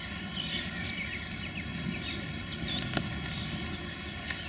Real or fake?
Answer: real